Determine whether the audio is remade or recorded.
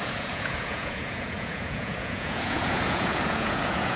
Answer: remade